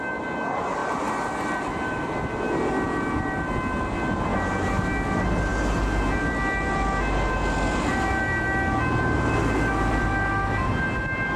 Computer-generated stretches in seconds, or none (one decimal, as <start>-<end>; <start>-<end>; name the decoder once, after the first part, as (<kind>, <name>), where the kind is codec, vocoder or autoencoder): none